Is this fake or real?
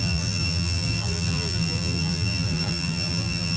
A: fake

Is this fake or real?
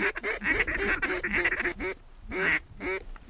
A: real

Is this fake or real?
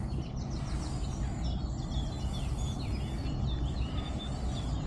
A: real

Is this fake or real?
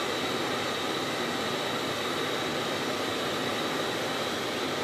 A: real